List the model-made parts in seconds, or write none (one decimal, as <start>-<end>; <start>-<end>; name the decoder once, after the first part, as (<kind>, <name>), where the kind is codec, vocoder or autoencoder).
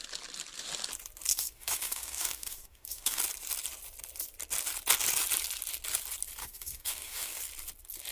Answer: 1.3-3.2 (codec, DAC); 6.4-7.4